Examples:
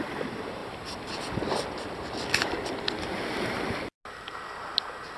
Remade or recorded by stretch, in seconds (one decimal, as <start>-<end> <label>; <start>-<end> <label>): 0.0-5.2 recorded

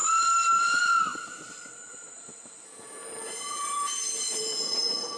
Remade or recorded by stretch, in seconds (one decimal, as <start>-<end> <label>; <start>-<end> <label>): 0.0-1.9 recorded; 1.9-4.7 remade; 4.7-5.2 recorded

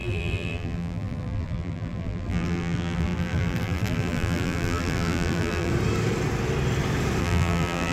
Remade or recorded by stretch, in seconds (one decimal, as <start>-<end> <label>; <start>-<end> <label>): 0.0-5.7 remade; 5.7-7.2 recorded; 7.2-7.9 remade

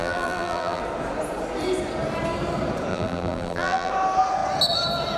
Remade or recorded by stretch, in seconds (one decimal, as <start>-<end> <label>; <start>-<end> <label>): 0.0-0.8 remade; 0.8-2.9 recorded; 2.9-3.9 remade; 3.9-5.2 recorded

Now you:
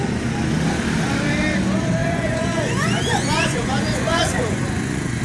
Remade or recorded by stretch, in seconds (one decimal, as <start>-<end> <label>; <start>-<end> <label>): 0.0-2.0 recorded; 2.0-5.2 remade